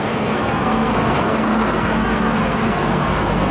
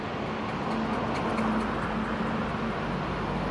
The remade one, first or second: first